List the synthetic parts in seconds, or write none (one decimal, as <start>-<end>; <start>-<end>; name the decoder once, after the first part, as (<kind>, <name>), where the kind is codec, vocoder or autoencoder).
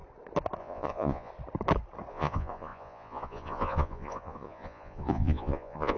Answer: 0.6-1.3 (vocoder, Vocos); 2.1-6.0